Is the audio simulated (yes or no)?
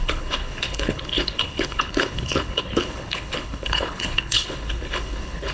yes